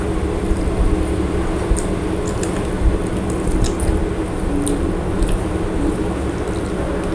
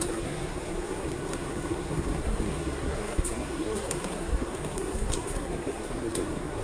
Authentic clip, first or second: first